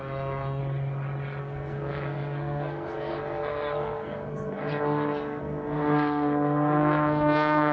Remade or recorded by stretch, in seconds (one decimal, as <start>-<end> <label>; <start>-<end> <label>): 0.0-0.6 remade; 0.6-1.4 recorded; 1.4-7.7 remade